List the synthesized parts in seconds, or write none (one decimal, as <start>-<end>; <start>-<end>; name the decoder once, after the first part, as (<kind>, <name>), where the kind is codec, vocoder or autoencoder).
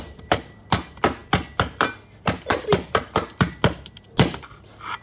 none